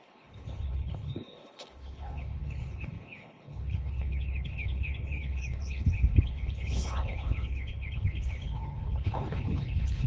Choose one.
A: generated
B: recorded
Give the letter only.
A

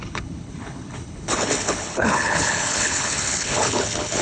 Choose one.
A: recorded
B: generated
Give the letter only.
B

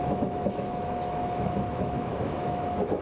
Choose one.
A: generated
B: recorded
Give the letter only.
A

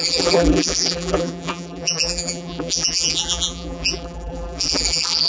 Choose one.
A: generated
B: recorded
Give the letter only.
A